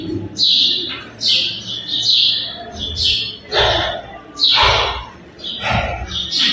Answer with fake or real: real